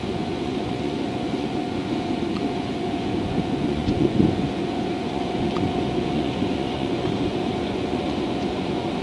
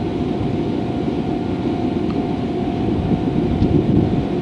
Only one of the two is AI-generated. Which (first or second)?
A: first